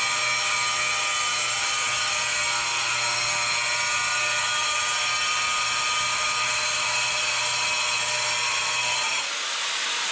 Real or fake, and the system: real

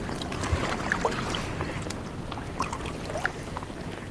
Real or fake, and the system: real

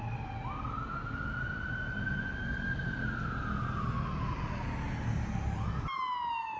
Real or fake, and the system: real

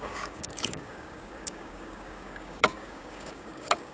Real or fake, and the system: fake, codec, DAC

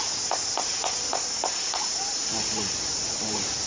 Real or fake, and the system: real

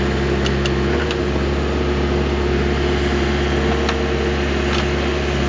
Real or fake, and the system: real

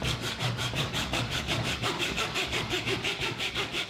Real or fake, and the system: fake, codec, DAC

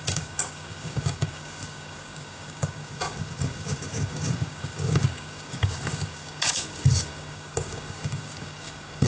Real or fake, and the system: fake, codec, DAC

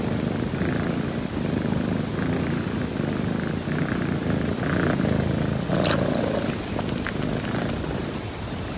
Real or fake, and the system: real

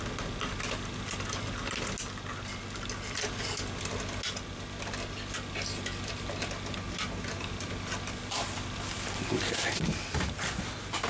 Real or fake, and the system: real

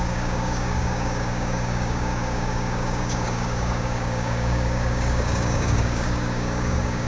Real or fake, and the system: fake, codec, DAC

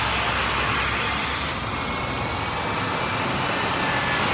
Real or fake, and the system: real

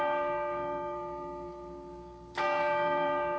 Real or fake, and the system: fake, codec, DAC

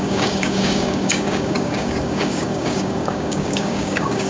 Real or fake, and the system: fake, codec, DAC